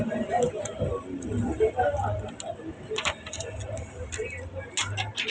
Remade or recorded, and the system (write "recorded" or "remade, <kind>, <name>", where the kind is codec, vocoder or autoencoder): recorded